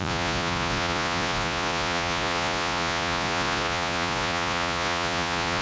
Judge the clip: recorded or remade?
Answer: remade